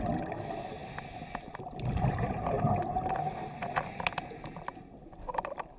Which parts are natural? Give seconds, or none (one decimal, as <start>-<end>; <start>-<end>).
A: 0.0-5.8